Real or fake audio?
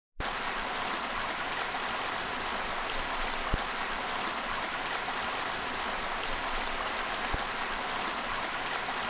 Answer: real